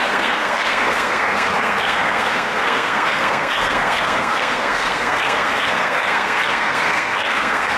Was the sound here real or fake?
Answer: fake